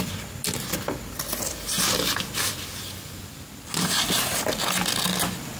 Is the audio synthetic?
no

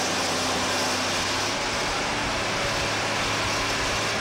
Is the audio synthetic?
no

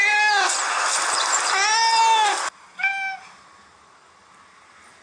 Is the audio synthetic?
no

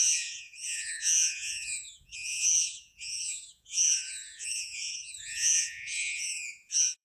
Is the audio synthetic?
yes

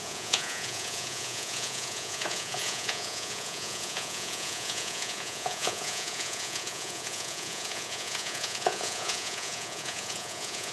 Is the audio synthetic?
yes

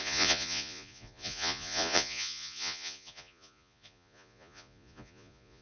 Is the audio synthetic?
yes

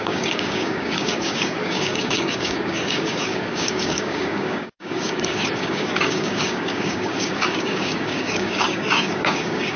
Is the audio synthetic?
yes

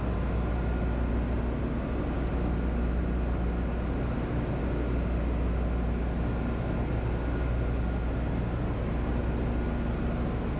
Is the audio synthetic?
no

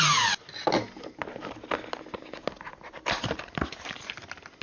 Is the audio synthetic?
no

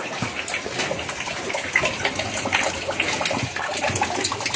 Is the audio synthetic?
no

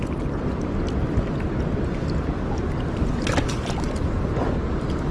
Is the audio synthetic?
no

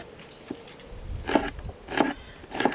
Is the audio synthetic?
no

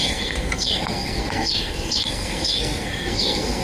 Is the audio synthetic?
yes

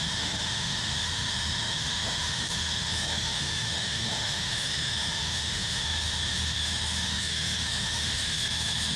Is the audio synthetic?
yes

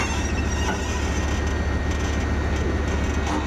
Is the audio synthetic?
no